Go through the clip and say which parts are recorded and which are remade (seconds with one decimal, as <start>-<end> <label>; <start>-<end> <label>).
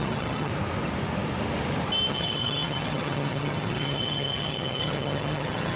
0.0-0.5 remade; 0.5-2.1 recorded; 2.1-5.8 remade